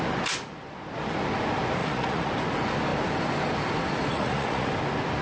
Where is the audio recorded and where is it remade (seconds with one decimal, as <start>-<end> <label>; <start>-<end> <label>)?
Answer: 0.0-1.8 recorded; 1.8-2.3 remade; 2.3-4.1 recorded; 4.1-4.7 remade; 4.7-5.2 recorded

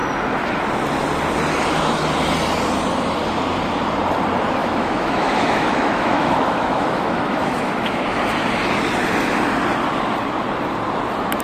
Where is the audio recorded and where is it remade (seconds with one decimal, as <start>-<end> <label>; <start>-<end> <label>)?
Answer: 0.0-4.6 recorded; 4.6-8.1 remade; 8.1-11.4 recorded